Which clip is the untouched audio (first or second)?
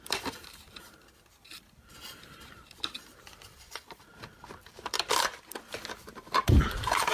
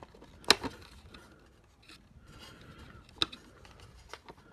second